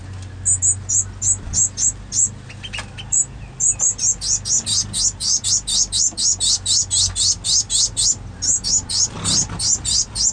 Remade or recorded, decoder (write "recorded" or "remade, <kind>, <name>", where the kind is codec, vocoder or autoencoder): recorded